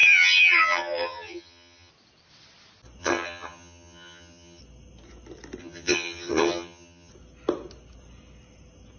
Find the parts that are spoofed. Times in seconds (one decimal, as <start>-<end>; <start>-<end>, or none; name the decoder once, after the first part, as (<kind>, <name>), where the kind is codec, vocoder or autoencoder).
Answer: 0.0-1.9 (vocoder, HiFi-GAN); 3.0-4.6; 5.6-7.1